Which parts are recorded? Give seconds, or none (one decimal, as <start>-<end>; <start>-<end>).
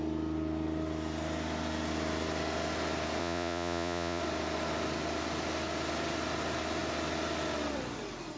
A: 0.0-3.2; 4.2-8.4